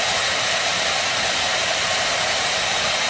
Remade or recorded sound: remade